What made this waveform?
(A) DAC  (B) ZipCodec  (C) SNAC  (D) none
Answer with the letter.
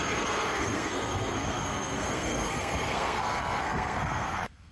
C